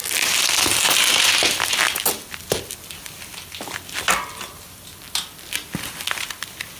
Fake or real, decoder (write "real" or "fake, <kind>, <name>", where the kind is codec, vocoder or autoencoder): real